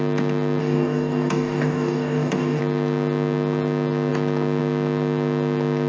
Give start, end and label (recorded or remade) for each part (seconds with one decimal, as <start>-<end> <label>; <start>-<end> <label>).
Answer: 0.0-0.6 recorded; 0.6-2.6 remade; 2.6-5.9 recorded